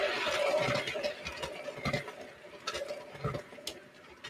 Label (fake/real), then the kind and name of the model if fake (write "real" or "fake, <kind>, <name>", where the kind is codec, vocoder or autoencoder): real